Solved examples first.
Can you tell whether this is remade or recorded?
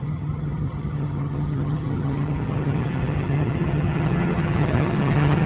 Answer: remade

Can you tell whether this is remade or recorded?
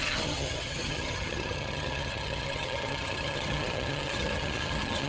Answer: remade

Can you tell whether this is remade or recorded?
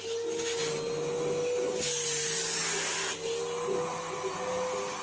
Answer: recorded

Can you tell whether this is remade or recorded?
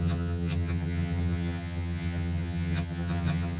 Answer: remade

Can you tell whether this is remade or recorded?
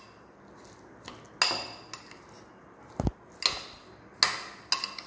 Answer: recorded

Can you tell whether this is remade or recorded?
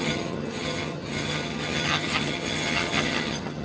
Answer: remade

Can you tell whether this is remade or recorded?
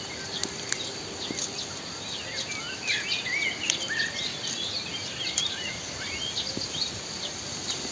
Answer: recorded